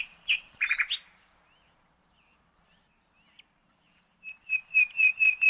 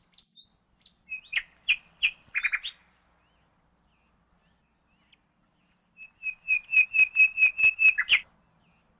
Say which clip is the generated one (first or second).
first